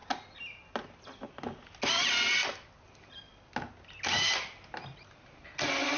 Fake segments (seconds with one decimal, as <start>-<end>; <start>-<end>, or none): none